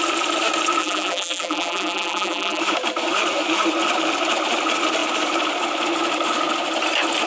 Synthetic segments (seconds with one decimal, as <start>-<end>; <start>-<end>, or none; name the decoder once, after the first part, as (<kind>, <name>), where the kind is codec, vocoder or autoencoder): 0.8-2.6 (vocoder, BigVGAN v2)